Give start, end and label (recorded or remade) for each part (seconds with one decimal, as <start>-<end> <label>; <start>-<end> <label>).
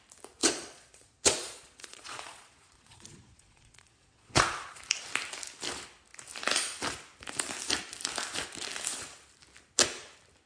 0.0-0.4 recorded; 0.4-4.8 remade; 4.8-10.5 recorded